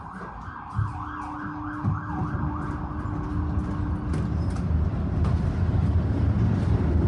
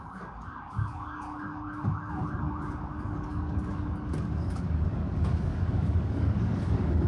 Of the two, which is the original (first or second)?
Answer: first